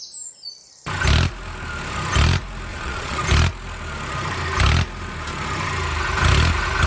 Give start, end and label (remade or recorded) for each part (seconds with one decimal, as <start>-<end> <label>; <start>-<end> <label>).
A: 0.0-2.7 recorded; 2.7-3.2 remade; 3.2-6.9 recorded